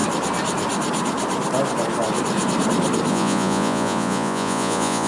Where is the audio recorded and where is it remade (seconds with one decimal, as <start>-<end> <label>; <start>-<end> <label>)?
0.0-3.1 recorded; 3.1-5.1 remade